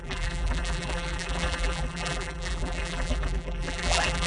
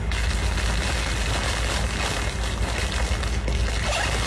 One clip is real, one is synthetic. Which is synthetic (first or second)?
first